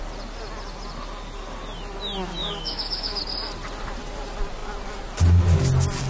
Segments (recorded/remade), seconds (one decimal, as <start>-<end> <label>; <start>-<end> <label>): 0.0-2.4 recorded; 2.4-3.2 remade; 3.2-6.1 recorded